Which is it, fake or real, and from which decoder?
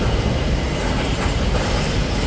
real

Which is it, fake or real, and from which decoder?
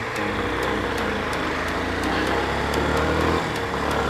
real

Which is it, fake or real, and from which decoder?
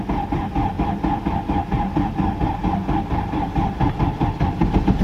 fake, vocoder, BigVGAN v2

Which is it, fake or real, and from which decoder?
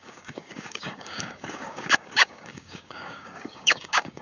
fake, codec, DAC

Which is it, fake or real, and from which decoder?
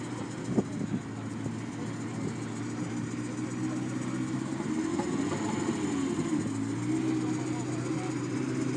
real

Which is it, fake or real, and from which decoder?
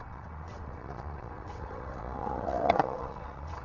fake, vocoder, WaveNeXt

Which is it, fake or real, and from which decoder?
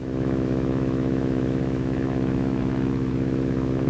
fake, autoencoder, DAC-VAE